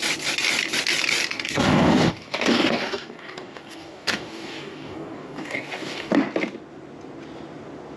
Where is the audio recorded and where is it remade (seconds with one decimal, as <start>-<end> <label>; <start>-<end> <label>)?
0.0-1.3 recorded; 1.3-6.1 remade; 6.1-8.0 recorded